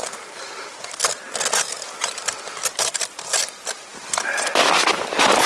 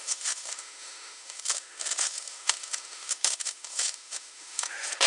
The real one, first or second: first